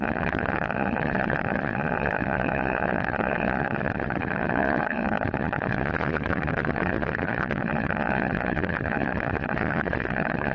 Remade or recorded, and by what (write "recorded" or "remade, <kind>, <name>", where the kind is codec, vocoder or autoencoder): remade, vocoder, Vocos